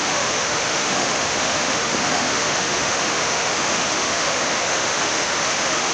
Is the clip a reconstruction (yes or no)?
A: yes